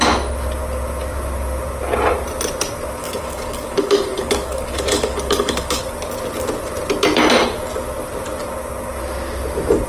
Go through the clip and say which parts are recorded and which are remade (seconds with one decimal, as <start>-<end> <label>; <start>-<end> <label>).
0.0-3.0 recorded; 3.0-5.8 remade; 5.8-9.9 recorded

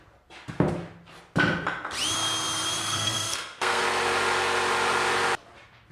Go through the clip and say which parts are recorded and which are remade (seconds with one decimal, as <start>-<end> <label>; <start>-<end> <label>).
0.0-2.8 recorded; 2.8-3.8 remade; 3.8-5.9 recorded

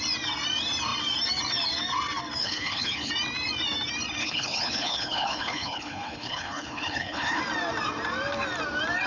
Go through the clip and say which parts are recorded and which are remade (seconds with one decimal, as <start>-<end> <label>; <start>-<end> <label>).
0.0-2.4 recorded; 2.4-3.1 remade; 3.1-4.2 recorded; 4.2-7.4 remade; 7.4-9.1 recorded